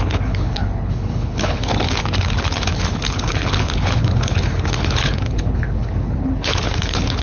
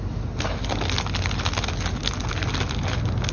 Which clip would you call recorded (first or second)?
second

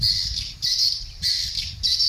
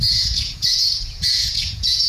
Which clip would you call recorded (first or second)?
first